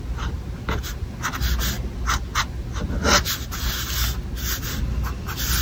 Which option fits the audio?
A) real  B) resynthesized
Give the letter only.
A